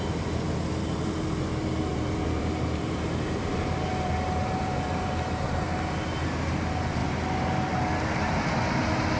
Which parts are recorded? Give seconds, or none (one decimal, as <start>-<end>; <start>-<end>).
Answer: 0.0-1.9; 5.6-9.2